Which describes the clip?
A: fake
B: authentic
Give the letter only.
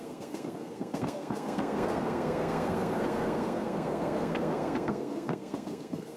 A